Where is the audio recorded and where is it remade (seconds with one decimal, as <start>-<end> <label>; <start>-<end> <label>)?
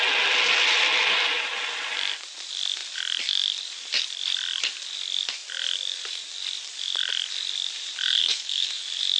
0.0-8.2 recorded; 8.2-8.7 remade; 8.7-9.2 recorded